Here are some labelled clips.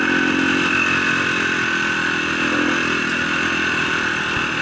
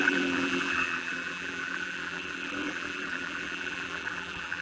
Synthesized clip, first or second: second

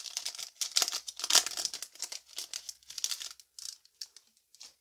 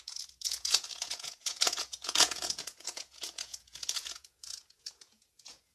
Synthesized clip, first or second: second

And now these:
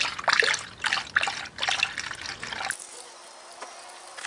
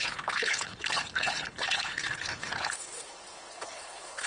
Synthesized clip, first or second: second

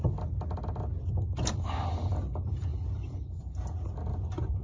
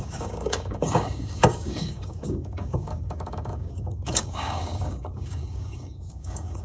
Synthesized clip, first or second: second